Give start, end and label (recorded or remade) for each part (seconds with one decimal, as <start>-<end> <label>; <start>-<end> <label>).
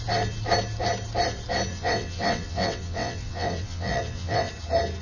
0.0-1.7 recorded; 1.7-4.5 remade; 4.5-5.0 recorded